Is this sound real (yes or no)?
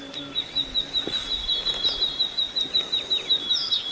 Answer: yes